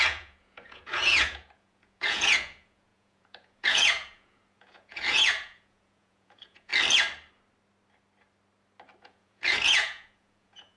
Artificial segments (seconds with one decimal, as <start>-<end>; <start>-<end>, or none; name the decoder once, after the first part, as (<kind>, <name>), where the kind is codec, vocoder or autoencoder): 0.0-6.7 (vocoder, Vocos); 9.0-10.8